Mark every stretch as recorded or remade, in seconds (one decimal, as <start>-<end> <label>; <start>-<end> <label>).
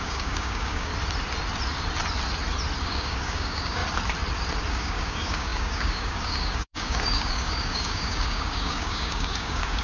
0.0-0.9 remade; 0.9-2.8 recorded; 2.8-3.8 remade; 3.8-4.7 recorded; 4.7-9.8 remade